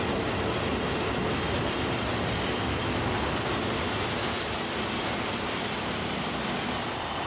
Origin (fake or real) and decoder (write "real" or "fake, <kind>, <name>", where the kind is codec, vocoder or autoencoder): real